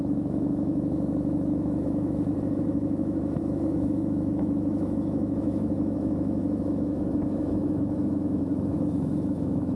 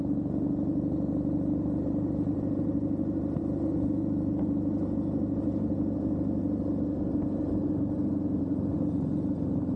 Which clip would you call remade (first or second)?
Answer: first